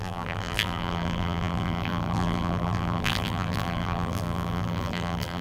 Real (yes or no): no